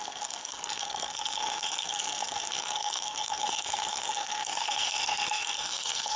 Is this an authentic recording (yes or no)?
no